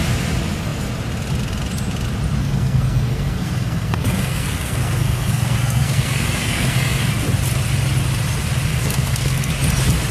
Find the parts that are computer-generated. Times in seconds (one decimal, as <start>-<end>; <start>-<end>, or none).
2.4-7.1; 8.7-9.5